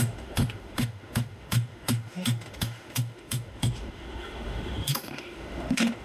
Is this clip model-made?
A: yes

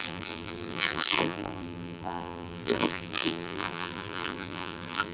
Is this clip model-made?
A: yes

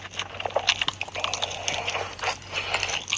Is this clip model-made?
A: no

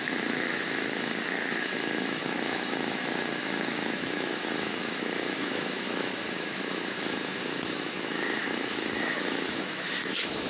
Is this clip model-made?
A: yes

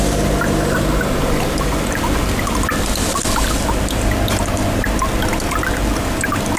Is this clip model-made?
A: no